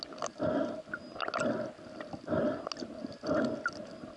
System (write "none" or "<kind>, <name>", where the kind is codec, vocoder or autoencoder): none